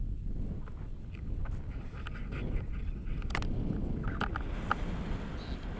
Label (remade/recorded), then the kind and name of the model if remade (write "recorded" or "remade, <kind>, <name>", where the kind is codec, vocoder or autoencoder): recorded